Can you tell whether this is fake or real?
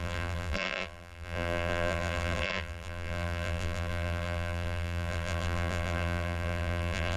fake